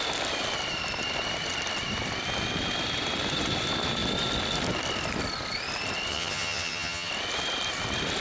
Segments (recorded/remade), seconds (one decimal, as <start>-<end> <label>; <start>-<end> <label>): 0.0-6.1 recorded; 6.1-7.1 remade; 7.1-8.2 recorded